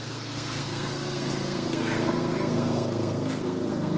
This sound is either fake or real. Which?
fake